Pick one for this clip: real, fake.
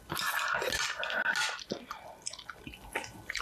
real